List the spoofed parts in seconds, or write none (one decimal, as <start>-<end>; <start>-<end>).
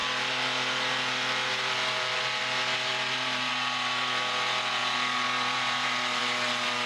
0.0-2.3; 2.9-3.5; 4.8-6.2